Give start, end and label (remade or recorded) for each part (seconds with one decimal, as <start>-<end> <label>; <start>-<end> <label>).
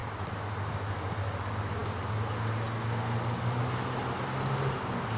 0.0-0.7 remade; 0.7-5.2 recorded